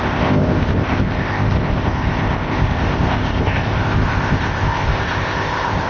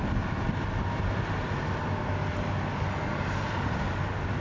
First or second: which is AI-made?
first